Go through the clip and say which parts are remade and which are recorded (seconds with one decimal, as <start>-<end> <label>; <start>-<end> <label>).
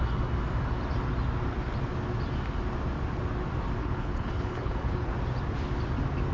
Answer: 0.0-3.8 recorded; 3.8-5.1 remade; 5.1-6.3 recorded